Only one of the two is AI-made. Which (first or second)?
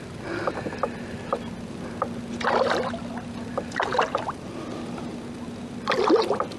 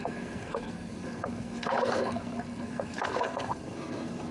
second